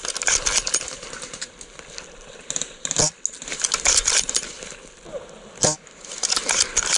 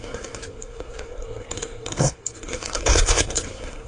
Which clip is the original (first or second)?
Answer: first